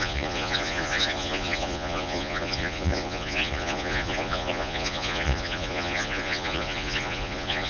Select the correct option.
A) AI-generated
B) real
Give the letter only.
A